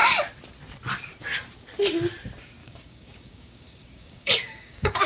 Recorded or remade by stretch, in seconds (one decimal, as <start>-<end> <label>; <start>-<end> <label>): 0.0-2.6 recorded; 2.6-5.1 remade